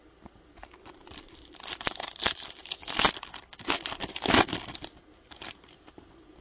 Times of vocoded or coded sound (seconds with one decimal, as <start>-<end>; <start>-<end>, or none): none